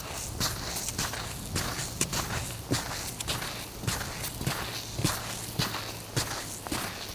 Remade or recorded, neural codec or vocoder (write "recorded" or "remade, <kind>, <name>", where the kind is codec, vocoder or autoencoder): recorded